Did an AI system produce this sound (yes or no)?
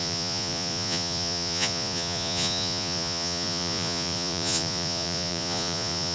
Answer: yes